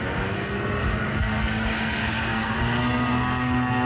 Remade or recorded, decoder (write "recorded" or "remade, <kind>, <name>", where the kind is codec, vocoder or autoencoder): remade, codec, SNAC